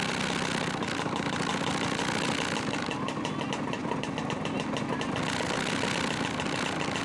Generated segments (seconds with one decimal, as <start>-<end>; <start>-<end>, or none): none